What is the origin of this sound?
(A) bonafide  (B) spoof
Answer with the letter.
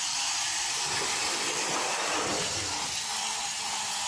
A